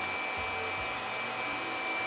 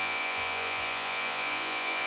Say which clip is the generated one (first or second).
second